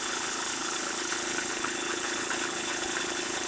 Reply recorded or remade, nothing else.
remade